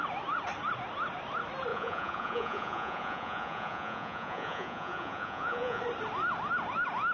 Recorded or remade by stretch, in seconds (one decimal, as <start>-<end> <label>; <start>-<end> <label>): 0.0-1.7 recorded; 1.7-5.8 remade; 5.8-7.1 recorded